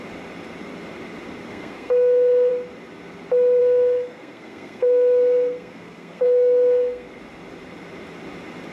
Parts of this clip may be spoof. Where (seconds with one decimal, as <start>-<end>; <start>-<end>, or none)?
1.5-2.5; 3.6-7.2